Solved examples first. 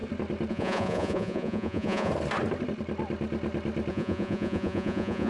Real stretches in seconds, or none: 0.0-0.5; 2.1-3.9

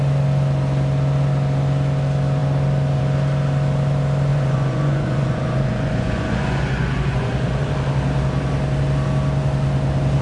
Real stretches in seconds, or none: 0.0-4.3; 7.7-10.2